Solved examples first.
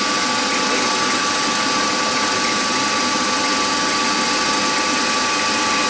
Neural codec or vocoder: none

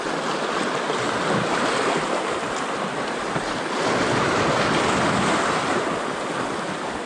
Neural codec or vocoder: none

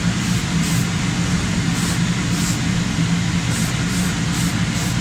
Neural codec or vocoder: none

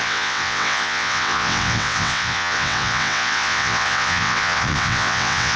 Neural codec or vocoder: vocoder, WaveNeXt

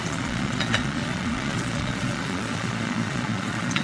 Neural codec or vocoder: vocoder, Vocos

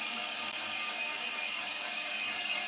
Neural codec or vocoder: codec, DAC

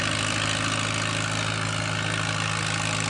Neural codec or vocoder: none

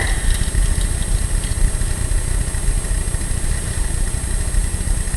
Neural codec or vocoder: none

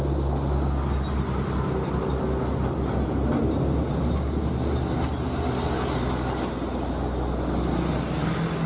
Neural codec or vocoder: none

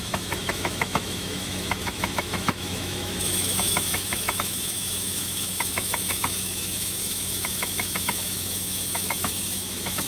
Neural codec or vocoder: autoencoder, DAC-VAE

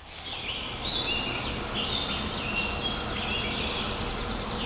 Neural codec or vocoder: none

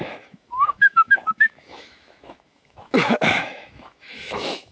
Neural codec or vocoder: autoencoder, DAC-VAE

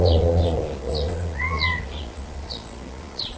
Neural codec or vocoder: vocoder, Vocos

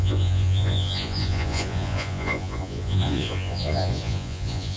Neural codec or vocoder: vocoder, Vocos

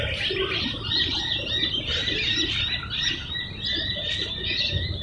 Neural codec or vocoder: none